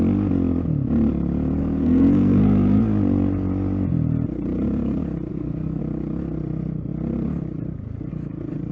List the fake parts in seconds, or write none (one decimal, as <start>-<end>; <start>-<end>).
1.6-2.8; 5.3-5.8